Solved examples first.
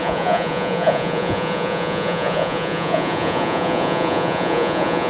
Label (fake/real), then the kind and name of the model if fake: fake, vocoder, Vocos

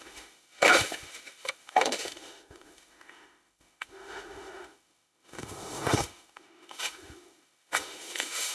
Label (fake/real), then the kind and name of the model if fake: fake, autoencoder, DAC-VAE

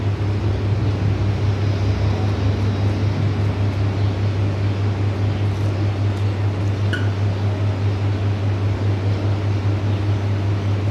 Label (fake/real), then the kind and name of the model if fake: real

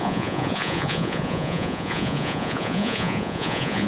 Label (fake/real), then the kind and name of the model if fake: fake, vocoder, Vocos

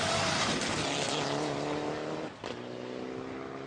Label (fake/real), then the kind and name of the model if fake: real